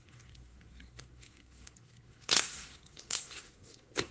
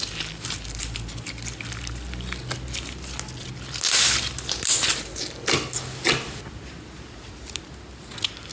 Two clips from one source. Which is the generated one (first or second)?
first